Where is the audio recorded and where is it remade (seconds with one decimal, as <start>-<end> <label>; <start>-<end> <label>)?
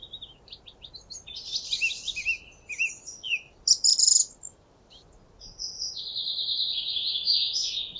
0.0-8.0 recorded